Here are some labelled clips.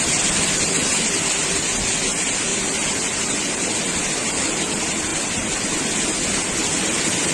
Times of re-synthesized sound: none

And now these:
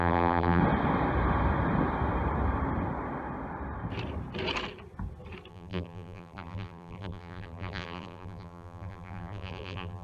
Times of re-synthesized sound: 0.0-0.6 (vocoder, BigVGAN v2); 5.5-10.0